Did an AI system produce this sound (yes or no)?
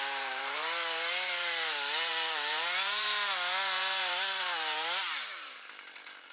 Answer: yes